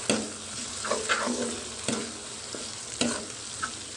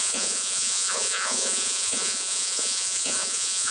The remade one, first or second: second